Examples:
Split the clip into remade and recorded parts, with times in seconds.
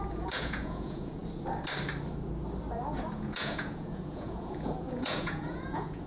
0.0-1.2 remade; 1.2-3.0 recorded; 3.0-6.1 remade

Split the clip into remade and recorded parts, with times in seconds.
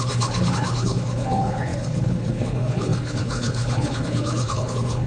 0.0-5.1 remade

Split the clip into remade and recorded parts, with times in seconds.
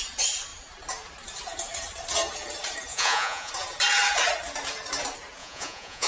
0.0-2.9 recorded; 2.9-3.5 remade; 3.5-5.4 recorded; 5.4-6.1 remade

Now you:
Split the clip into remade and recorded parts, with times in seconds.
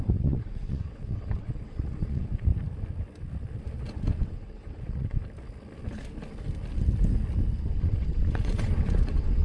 0.0-2.5 remade; 2.5-4.2 recorded; 4.2-5.2 remade; 5.2-7.6 recorded; 7.6-9.4 remade